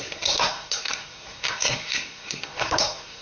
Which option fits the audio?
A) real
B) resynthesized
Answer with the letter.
B